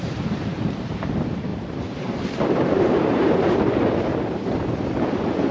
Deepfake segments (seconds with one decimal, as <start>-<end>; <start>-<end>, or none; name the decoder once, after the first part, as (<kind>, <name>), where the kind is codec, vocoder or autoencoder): 0.5-1.1 (vocoder, BigVGAN v2); 1.5-3.6; 4.1-4.7